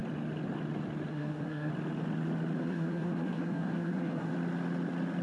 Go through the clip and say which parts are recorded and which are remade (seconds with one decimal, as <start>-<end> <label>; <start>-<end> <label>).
0.0-1.1 recorded; 1.1-1.7 remade; 1.7-2.6 recorded; 2.6-4.3 remade; 4.3-5.2 recorded